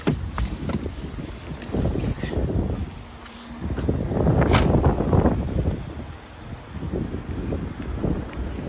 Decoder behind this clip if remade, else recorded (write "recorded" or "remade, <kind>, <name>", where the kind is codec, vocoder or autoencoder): recorded